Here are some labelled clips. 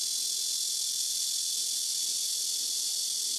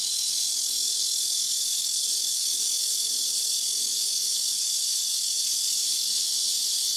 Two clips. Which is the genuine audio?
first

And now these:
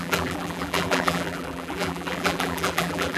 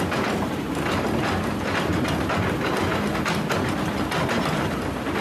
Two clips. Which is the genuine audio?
second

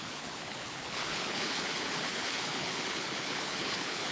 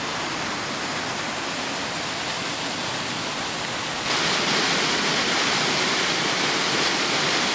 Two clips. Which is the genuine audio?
second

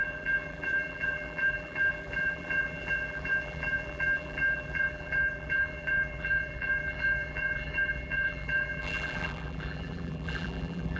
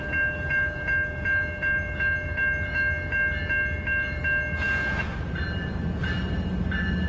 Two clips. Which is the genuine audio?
second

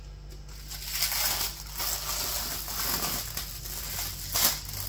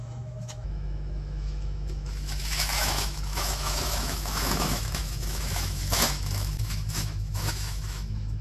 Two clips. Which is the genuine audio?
first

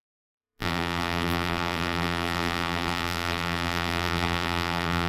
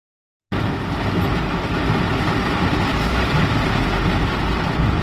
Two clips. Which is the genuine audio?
second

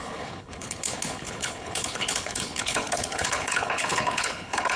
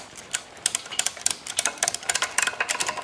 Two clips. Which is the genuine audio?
second